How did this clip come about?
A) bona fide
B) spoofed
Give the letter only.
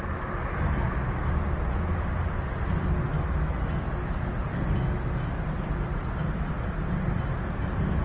A